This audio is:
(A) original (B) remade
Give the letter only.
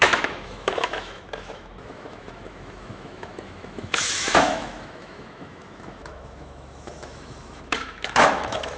B